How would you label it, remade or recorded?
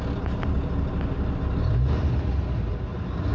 recorded